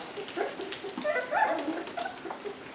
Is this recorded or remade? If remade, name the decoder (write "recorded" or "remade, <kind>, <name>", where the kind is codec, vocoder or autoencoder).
recorded